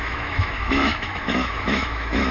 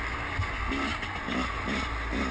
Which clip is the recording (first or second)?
second